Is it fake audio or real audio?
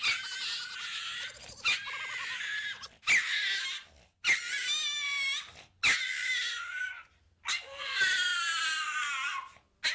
real